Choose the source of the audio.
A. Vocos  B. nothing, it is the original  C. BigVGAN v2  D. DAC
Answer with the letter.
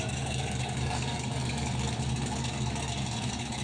D